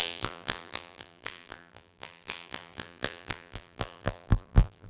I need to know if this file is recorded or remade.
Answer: remade